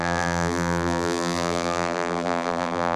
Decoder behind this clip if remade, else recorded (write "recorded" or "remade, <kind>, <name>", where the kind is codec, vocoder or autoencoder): remade, vocoder, BigVGAN v2